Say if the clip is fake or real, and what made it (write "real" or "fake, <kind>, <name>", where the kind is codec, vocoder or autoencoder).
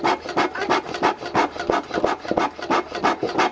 real